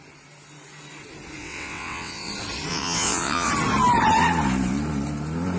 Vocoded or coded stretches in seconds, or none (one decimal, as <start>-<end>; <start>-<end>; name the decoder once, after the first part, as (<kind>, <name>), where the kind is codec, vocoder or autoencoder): 1.4-2.3 (vocoder, WaveNeXt); 2.7-3.5